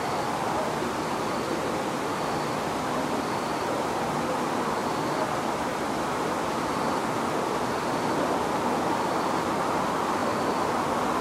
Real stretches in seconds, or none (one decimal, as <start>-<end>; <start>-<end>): 0.0-11.2